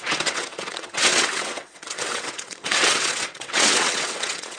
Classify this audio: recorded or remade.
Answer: remade